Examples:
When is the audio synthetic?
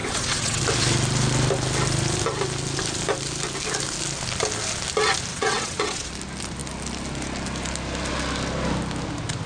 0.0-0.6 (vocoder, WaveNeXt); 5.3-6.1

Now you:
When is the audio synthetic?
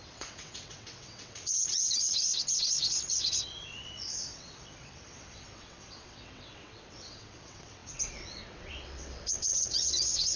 0.0-10.4 (vocoder, WaveNeXt)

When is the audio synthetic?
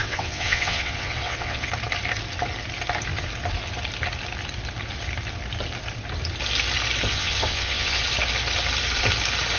0.0-1.7 (vocoder, WaveNeXt); 7.1-8.0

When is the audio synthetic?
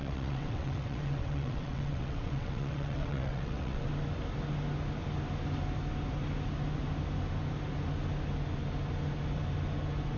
0.0-3.9 (vocoder, WaveNeXt)